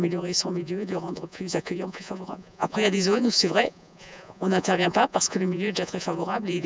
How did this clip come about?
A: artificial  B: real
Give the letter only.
A